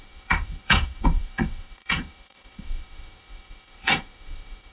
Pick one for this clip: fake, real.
fake